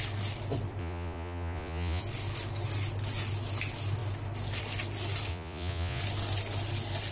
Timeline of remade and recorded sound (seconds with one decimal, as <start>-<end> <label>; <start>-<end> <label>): 0.0-0.8 recorded; 0.8-2.0 remade; 2.0-5.3 recorded; 5.3-6.0 remade; 6.0-7.1 recorded